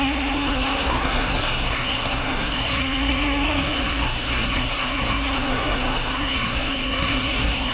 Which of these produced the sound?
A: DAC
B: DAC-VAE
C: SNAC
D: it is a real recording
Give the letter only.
C